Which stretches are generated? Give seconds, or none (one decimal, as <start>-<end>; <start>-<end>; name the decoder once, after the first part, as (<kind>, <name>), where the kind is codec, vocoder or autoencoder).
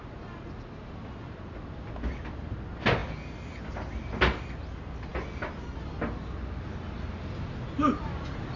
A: none